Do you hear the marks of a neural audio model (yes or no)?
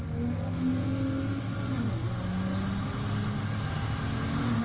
no